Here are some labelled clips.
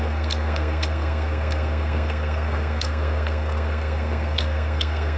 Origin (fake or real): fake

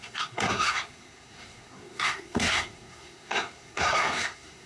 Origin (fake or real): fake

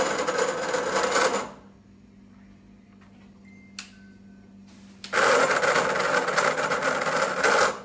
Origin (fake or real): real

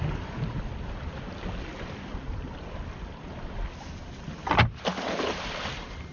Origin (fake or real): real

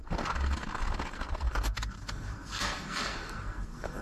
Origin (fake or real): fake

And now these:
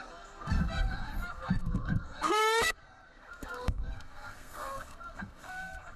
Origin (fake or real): fake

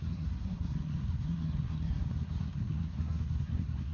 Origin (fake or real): fake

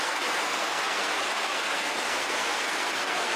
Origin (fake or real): fake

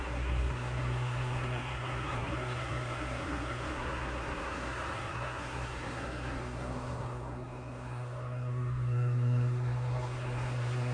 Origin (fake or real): fake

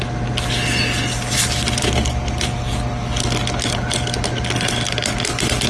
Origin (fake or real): real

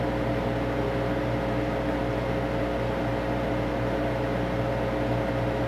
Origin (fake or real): real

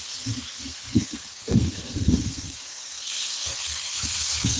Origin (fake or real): fake